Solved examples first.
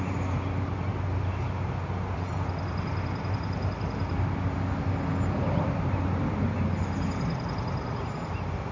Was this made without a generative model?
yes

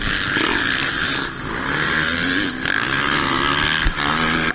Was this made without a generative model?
yes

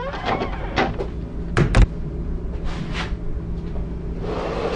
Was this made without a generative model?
yes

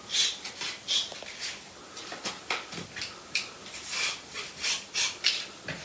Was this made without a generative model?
yes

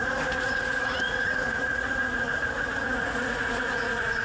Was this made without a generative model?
no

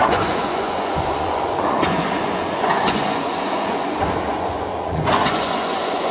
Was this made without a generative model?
no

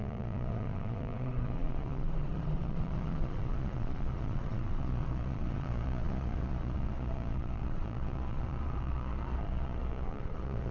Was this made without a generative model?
no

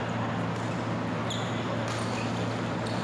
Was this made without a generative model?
yes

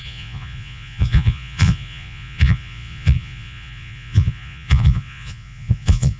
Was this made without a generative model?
no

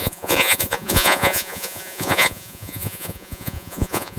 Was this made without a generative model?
no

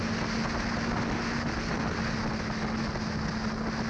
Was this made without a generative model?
yes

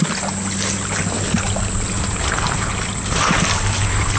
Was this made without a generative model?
yes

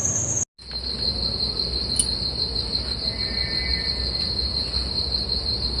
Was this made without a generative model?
yes